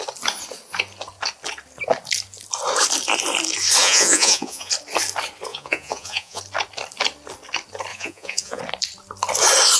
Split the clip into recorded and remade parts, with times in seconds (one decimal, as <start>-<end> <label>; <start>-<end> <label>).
0.0-3.8 recorded; 3.8-4.7 remade; 4.7-5.5 recorded; 5.5-6.4 remade; 6.4-7.9 recorded; 7.9-8.6 remade; 8.6-9.8 recorded